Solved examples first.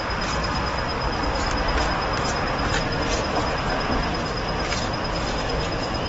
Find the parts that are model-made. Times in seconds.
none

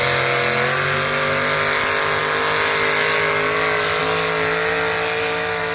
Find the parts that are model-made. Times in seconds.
none